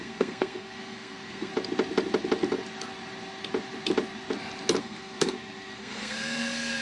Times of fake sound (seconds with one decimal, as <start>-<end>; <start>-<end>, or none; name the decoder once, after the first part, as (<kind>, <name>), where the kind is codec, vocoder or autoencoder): 0.0-1.5 (codec, SNAC); 4.8-6.8